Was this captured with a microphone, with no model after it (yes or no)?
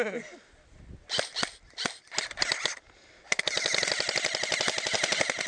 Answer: yes